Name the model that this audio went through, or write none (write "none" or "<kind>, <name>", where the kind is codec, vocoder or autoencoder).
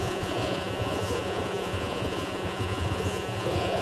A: vocoder, Vocos